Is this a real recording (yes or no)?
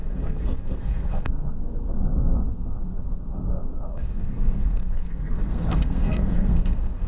no